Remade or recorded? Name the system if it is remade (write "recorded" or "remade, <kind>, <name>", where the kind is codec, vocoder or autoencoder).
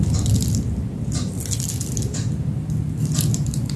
recorded